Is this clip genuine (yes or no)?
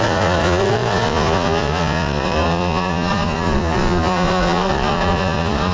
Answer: no